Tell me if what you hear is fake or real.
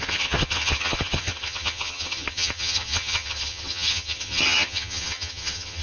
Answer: fake